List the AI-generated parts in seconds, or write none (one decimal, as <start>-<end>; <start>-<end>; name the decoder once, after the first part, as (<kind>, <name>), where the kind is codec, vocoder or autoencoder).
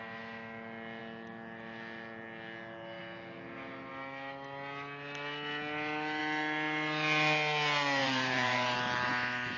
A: 8.0-9.1 (vocoder, BigVGAN v2)